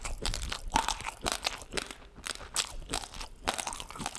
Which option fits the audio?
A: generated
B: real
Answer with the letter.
A